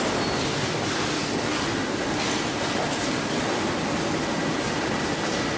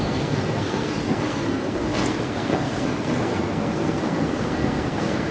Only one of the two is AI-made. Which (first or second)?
second